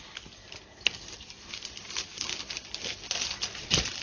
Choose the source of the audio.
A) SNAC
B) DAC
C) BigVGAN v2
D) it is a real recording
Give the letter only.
D